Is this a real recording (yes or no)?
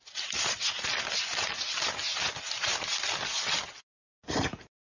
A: yes